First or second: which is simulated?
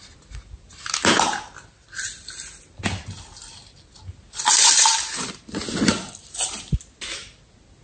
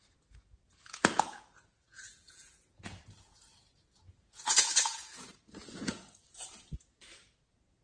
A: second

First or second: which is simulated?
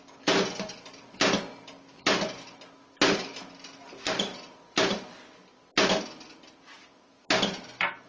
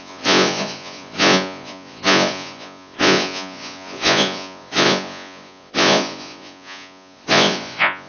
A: second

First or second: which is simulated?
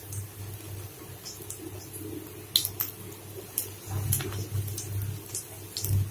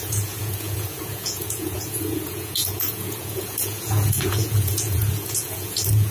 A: second